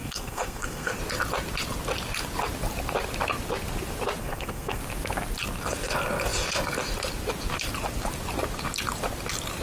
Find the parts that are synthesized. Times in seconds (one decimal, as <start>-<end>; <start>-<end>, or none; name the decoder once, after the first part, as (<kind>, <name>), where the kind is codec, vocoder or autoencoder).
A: 0.0-1.0 (codec, SNAC); 4.2-4.8